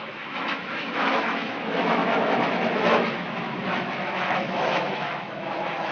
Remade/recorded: remade